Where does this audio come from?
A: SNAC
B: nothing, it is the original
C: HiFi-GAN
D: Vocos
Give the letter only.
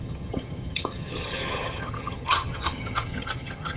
C